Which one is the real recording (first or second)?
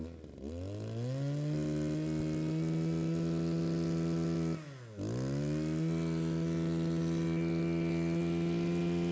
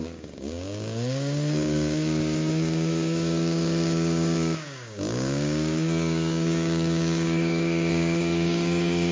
first